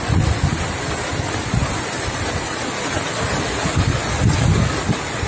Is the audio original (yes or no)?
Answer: yes